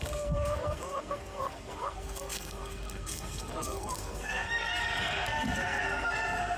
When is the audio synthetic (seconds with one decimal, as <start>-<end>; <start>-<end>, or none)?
0.0-6.6